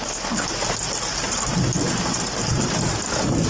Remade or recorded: recorded